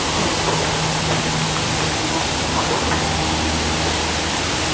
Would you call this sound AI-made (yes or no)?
no